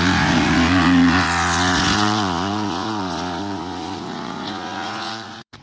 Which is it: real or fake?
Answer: fake